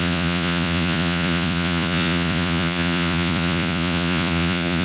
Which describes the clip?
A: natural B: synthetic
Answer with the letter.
B